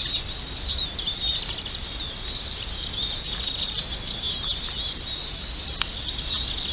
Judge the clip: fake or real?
real